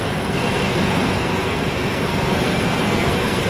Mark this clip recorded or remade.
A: remade